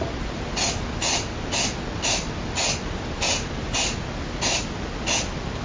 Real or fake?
real